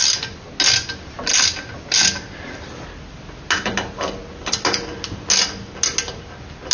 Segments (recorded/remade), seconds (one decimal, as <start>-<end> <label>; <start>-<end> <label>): 0.0-6.7 recorded